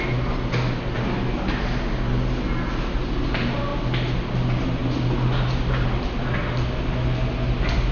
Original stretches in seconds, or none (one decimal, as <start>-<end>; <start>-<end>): 0.0-7.9